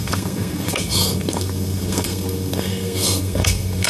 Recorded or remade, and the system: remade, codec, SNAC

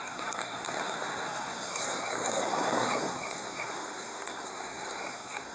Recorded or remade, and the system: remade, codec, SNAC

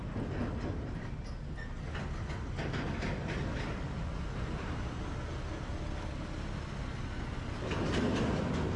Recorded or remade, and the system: recorded